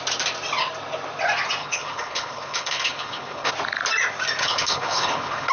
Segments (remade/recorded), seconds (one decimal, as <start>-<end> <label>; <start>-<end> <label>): 0.0-1.6 recorded; 1.6-3.5 remade; 3.5-4.4 recorded; 4.4-5.5 remade